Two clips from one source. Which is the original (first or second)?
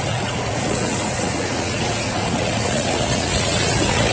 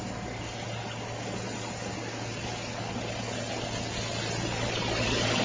second